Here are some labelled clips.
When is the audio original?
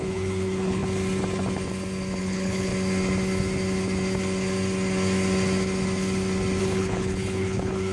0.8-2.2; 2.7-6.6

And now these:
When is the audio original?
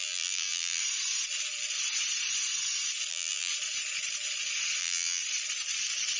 0.8-3.1; 3.5-4.8; 5.2-6.2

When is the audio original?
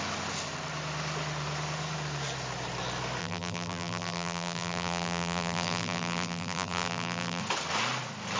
0.0-3.2; 7.4-8.4